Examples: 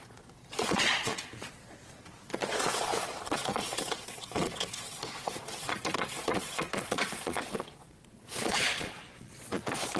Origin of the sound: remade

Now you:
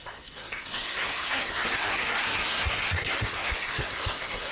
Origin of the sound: remade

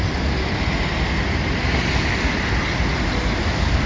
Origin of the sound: recorded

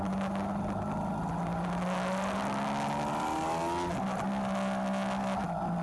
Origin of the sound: recorded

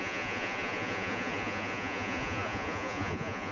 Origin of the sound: remade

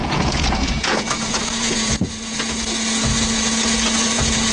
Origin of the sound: remade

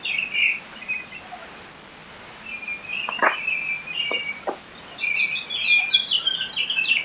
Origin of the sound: recorded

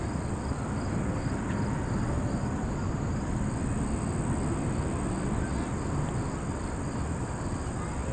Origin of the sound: recorded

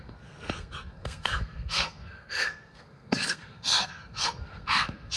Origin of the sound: remade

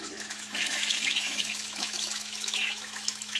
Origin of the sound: remade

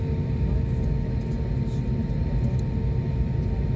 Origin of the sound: recorded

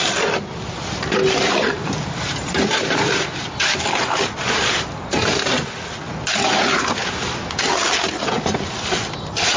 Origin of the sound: recorded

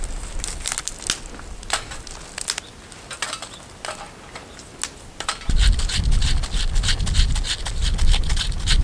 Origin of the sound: recorded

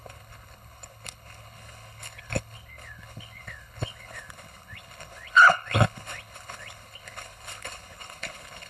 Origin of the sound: remade